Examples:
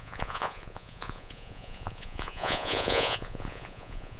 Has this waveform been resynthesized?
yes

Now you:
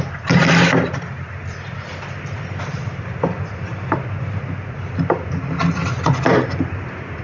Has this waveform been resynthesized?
no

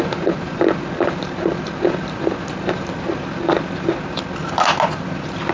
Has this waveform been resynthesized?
no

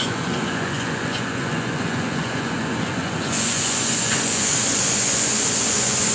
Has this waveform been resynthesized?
yes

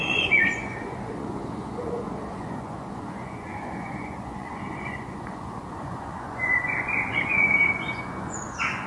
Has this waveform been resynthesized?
yes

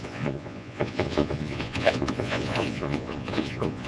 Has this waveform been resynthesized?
yes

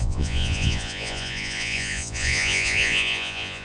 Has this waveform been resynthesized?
yes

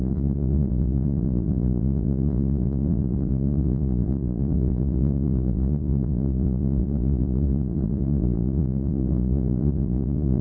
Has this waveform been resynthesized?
yes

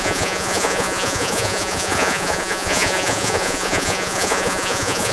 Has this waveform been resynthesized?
yes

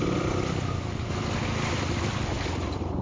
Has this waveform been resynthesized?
no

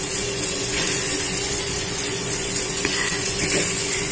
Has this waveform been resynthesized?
yes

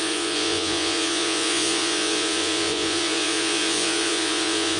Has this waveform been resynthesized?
yes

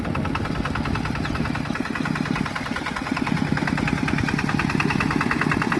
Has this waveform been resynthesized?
no